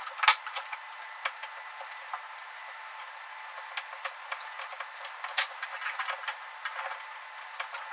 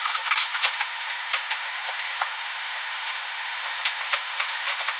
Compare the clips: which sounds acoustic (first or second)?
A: first